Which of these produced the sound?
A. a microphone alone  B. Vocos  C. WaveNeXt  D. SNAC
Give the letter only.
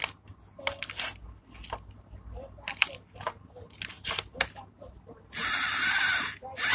A